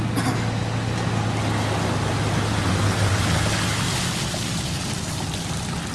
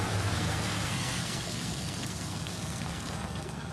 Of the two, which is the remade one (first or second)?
second